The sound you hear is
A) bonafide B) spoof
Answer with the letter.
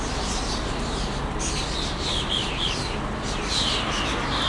A